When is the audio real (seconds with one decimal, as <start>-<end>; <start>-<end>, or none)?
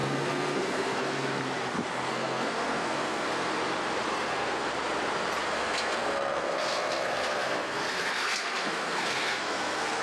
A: 1.4-2.1; 3.5-4.1; 4.7-5.4